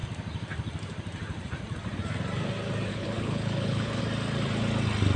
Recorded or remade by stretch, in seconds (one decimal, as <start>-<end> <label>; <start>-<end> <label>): 0.0-2.9 recorded; 2.9-4.0 remade; 4.0-5.2 recorded